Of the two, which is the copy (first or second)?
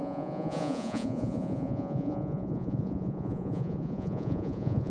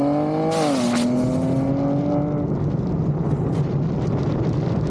first